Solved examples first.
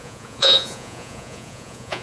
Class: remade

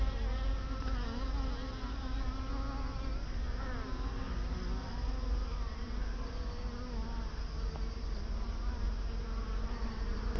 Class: recorded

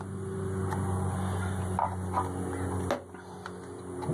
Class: recorded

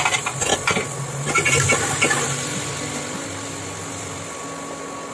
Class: recorded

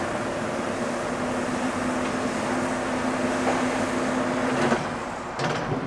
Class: recorded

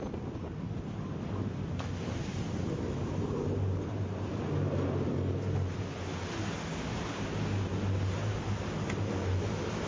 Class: recorded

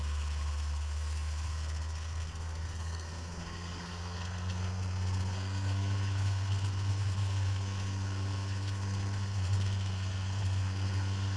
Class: remade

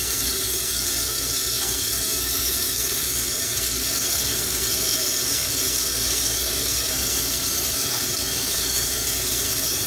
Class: remade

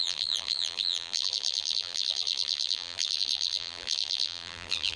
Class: remade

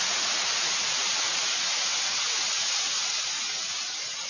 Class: remade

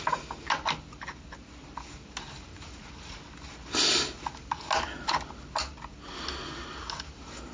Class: recorded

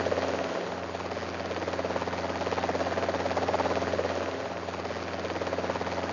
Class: recorded